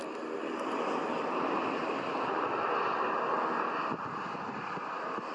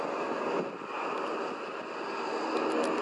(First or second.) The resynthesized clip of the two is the first